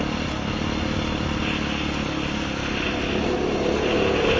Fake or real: real